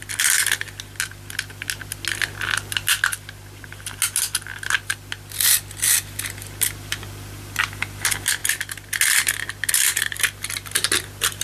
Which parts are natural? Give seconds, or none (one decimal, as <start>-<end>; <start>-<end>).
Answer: 0.0-11.4